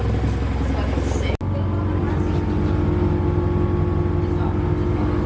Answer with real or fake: real